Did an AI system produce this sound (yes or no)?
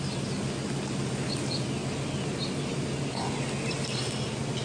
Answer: no